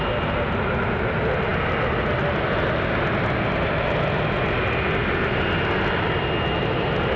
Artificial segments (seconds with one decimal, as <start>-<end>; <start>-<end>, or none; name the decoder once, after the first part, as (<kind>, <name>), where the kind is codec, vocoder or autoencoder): none